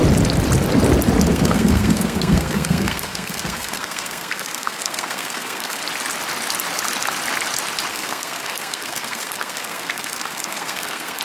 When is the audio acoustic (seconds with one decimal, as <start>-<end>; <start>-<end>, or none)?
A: 0.0-1.3; 5.8-7.9